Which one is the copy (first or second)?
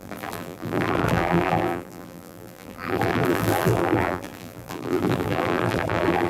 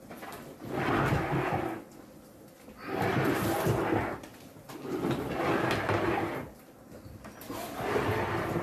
first